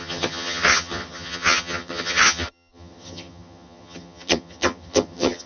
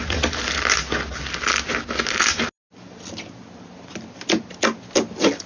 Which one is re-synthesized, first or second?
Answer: first